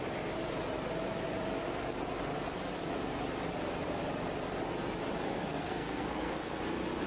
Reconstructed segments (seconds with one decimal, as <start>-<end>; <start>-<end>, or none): 5.3-6.6

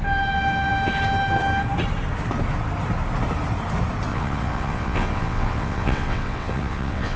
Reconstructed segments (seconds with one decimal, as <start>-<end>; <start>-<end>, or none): 4.1-7.2

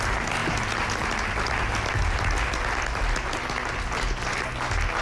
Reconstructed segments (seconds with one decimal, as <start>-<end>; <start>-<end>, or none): none

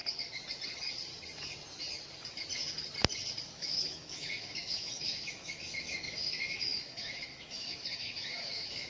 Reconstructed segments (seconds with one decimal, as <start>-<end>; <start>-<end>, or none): 3.5-8.9

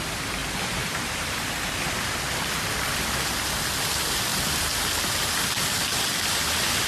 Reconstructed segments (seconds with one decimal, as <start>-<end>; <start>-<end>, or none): 0.4-1.4

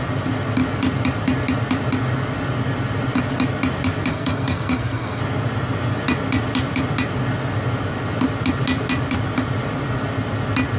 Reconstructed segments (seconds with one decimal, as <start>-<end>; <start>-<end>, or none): 4.1-5.2

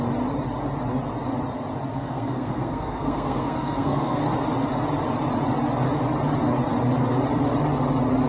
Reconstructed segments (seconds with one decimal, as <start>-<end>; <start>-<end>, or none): 1.9-4.2

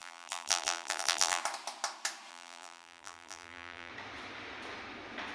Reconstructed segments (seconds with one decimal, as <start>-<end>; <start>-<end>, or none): 0.0-1.4; 2.3-3.9